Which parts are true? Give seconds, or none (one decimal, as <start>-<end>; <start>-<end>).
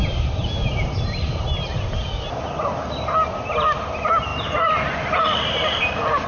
0.0-6.3